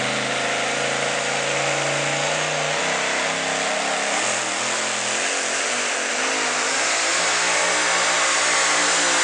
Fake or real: real